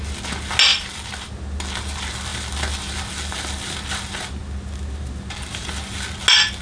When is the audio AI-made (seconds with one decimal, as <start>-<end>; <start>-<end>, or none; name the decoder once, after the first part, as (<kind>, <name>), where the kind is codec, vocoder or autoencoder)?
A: 0.7-1.3 (vocoder, BigVGAN v2)